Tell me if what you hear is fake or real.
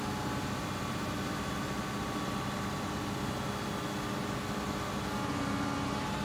real